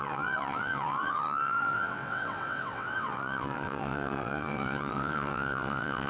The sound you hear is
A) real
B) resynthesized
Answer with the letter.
B